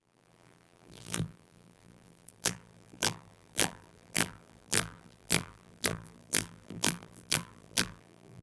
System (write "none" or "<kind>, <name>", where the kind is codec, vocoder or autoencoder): vocoder, BigVGAN v2